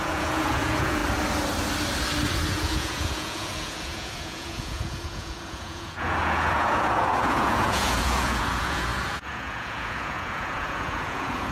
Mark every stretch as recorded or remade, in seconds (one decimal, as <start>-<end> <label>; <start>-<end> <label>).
0.0-1.0 remade; 1.0-2.5 recorded; 2.5-11.5 remade